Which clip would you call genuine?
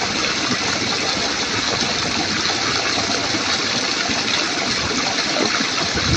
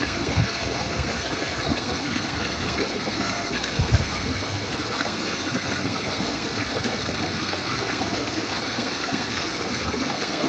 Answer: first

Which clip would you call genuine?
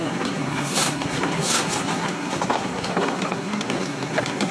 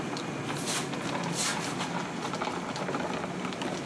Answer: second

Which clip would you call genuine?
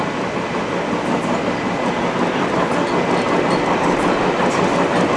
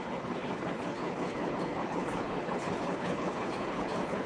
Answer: first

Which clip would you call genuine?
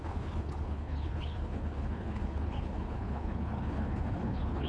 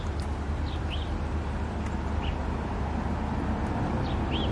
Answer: second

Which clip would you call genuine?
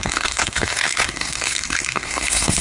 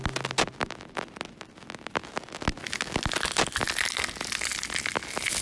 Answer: second